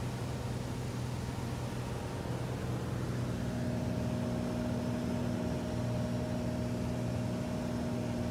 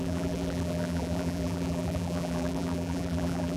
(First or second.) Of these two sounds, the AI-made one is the second